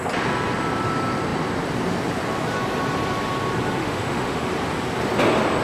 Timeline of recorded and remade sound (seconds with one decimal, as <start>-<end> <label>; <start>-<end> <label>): 0.0-3.8 recorded; 3.8-4.5 remade; 4.5-5.6 recorded